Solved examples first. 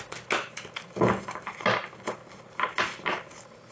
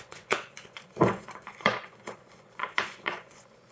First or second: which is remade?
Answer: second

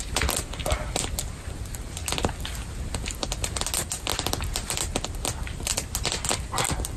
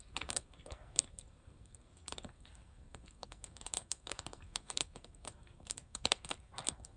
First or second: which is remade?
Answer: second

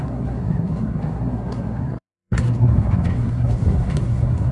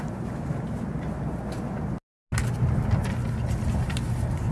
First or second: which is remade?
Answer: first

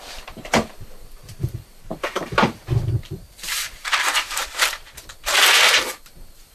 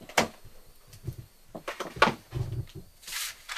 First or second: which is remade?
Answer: first